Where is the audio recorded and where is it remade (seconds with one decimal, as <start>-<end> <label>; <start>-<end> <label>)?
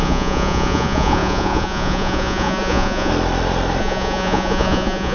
0.0-3.1 remade; 3.1-3.8 recorded; 3.8-5.1 remade